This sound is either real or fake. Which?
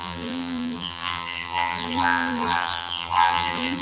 fake